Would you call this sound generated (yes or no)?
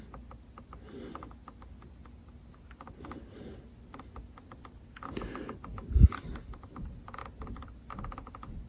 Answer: no